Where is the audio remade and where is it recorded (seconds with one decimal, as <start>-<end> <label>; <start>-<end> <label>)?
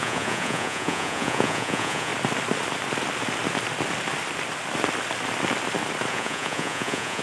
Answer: 0.0-2.1 remade; 2.1-6.1 recorded; 6.1-7.2 remade